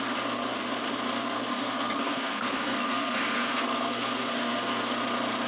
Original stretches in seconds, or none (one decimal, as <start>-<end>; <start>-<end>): 0.0-1.5; 4.8-5.5